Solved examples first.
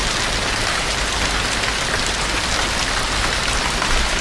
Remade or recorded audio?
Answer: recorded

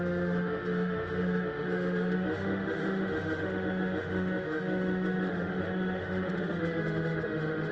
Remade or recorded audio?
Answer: remade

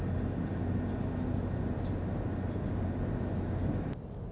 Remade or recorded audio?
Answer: recorded